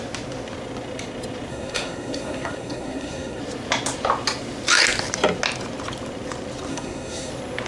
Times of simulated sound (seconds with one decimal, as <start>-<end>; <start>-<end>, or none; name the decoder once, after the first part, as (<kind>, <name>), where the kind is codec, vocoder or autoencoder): 1.5-3.4 (codec, SNAC); 6.7-7.3